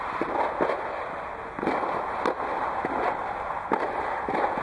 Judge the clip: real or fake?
real